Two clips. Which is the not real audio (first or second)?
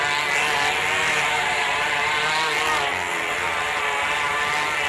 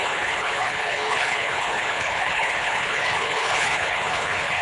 second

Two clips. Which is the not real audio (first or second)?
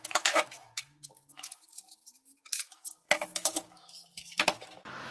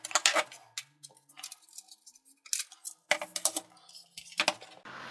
first